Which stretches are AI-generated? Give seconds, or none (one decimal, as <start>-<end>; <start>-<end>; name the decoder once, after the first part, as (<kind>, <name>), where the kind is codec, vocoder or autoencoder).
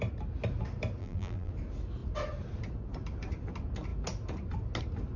1.0-1.5 (vocoder, BigVGAN v2)